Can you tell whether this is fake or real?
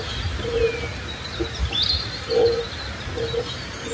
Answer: real